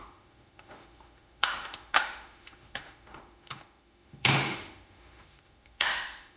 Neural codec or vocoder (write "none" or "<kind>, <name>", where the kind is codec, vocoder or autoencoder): autoencoder, DAC-VAE